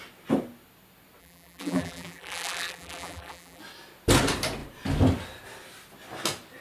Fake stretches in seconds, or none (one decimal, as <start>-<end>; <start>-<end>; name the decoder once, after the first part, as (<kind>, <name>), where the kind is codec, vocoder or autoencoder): 1.2-3.6 (vocoder, BigVGAN v2)